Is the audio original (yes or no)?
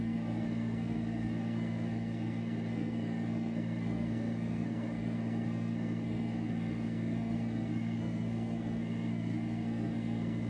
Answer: no